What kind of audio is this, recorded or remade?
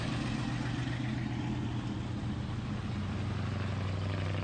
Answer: recorded